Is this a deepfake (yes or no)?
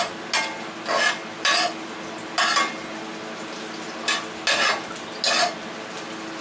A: no